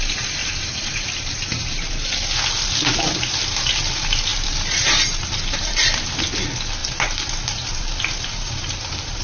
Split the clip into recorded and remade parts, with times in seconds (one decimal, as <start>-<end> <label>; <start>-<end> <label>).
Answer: 0.0-0.4 recorded; 0.4-1.9 remade; 1.9-4.3 recorded; 4.3-5.7 remade; 5.7-6.8 recorded; 6.8-9.2 remade